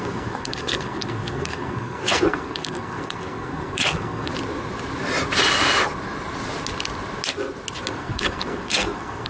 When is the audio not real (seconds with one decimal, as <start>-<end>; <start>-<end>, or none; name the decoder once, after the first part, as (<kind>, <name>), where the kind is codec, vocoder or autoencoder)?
0.0-4.3 (codec, SNAC); 7.9-9.3